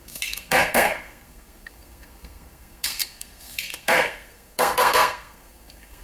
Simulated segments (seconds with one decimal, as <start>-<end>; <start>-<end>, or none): 0.0-6.0